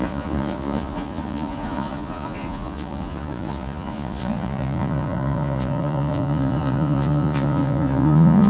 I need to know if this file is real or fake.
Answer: fake